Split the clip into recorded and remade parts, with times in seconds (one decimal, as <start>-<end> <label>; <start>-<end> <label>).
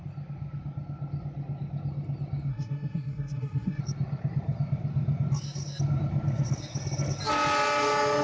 0.0-2.5 recorded; 2.5-3.8 remade; 3.8-8.2 recorded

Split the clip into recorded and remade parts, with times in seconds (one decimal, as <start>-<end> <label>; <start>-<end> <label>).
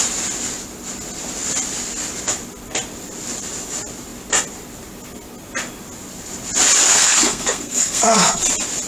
0.0-6.9 recorded; 6.9-8.4 remade; 8.4-8.9 recorded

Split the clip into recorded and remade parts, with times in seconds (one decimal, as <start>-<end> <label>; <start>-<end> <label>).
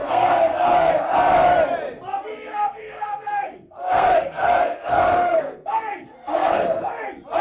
0.0-0.9 remade; 0.9-2.5 recorded; 2.5-6.9 remade; 6.9-7.4 recorded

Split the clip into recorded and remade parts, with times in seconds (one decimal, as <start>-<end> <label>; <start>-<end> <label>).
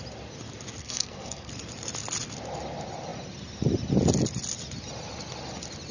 0.0-0.8 recorded; 0.8-1.5 remade; 1.5-5.9 recorded